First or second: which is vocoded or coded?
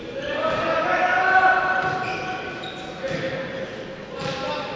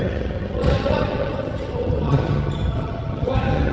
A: second